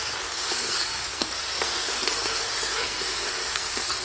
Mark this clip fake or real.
fake